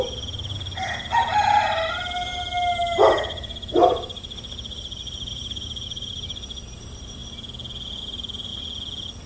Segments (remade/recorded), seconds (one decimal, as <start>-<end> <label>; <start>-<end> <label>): 0.0-7.2 remade; 7.2-8.0 recorded; 8.0-8.5 remade; 8.5-9.3 recorded